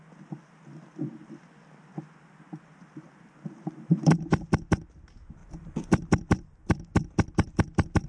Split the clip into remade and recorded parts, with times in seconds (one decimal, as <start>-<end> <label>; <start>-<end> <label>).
0.0-8.1 recorded